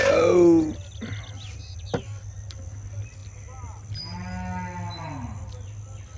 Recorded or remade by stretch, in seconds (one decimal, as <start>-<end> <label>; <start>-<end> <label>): 0.0-6.2 recorded